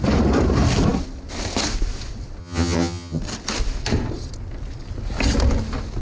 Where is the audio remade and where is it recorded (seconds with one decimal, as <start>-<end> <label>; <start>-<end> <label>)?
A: 0.0-2.4 recorded; 2.4-3.2 remade; 3.2-6.0 recorded